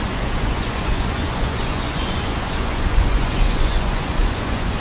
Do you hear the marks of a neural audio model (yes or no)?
yes